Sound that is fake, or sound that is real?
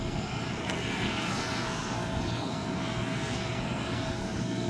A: fake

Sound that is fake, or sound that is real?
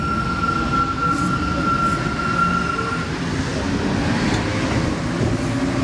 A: real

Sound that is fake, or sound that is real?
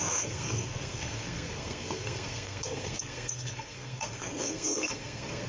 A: fake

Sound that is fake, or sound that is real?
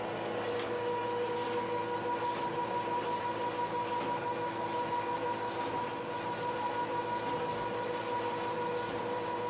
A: real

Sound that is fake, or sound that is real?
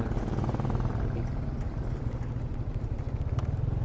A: real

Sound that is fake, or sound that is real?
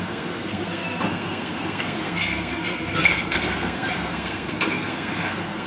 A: fake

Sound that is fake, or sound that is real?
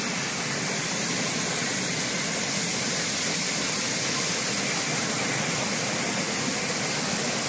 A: real